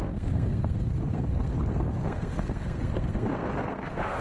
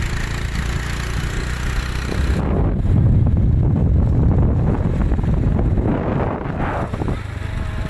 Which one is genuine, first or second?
second